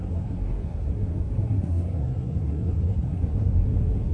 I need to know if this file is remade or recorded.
remade